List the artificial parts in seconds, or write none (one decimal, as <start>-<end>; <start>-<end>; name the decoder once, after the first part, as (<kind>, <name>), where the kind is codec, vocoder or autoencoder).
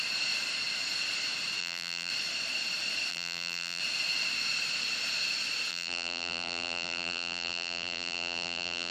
1.6-2.1 (vocoder, BigVGAN v2); 3.1-3.8; 5.7-8.9